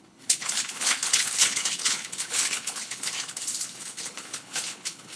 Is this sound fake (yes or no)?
yes